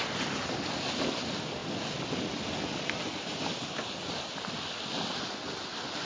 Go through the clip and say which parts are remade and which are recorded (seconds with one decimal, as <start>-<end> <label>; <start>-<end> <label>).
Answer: 0.0-6.1 recorded